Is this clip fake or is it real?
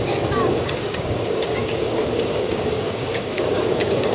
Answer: fake